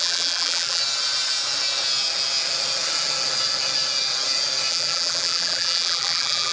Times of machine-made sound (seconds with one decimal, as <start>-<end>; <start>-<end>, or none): 0.0-0.8; 4.7-6.5